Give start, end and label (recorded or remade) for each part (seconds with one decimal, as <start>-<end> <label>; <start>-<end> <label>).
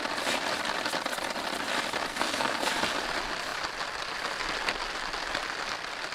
0.0-2.1 recorded; 2.1-2.7 remade; 2.7-6.1 recorded